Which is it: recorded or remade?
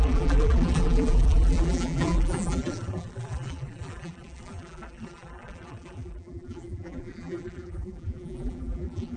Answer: remade